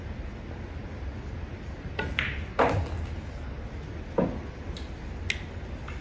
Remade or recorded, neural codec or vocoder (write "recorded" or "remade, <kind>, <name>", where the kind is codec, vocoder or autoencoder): recorded